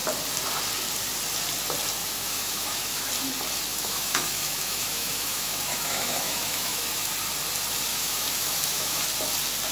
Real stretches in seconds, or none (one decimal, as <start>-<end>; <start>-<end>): 0.0-2.0; 3.1-3.7; 7.1-7.9; 9.0-9.7